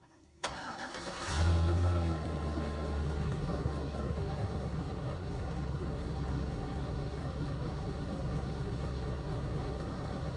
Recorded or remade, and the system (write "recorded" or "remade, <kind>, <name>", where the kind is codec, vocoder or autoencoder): remade, codec, SNAC